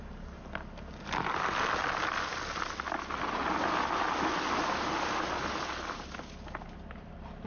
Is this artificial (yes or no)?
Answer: no